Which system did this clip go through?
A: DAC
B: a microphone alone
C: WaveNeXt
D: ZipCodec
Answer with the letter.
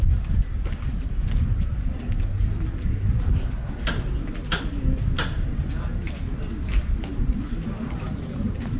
B